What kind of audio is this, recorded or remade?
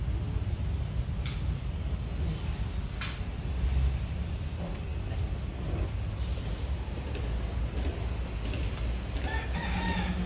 recorded